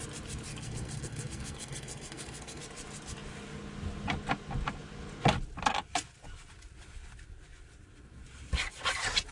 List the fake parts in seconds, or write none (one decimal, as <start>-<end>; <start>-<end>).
0.5-2.6